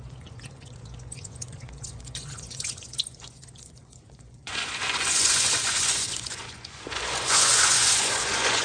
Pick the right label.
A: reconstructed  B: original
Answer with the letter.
A